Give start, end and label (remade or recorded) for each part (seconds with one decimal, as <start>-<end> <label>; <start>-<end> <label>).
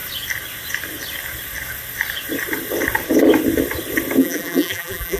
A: 0.0-4.2 recorded; 4.2-5.2 remade